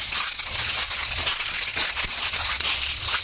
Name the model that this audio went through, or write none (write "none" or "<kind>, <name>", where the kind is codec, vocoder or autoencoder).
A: vocoder, Vocos